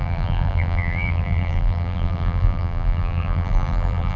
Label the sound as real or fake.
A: fake